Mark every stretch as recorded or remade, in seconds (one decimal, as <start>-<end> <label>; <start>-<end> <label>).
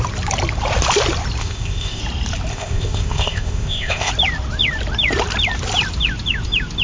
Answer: 0.0-1.4 recorded; 1.4-2.0 remade; 2.0-2.5 recorded; 2.5-4.1 remade; 4.1-6.8 recorded